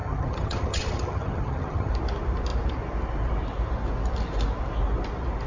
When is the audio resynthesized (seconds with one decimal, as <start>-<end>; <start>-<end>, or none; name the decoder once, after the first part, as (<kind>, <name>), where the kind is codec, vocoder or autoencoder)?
0.0-1.9 (vocoder, HiFi-GAN)